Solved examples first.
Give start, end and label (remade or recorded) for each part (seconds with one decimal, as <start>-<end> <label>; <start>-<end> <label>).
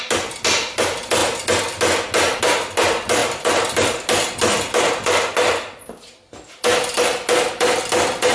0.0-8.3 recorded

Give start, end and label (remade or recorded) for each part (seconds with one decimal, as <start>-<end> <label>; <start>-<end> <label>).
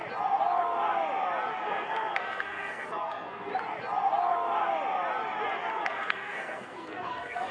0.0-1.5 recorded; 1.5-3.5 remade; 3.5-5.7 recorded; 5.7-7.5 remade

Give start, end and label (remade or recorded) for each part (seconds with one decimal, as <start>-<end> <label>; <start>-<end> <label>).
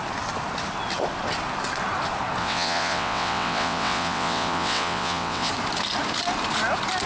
0.0-2.4 recorded; 2.4-5.5 remade; 5.5-7.1 recorded